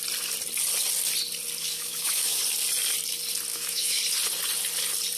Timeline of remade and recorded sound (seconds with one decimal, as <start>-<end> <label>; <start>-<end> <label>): 0.0-1.6 recorded; 1.6-2.4 remade; 2.4-3.5 recorded; 3.5-4.0 remade; 4.0-5.2 recorded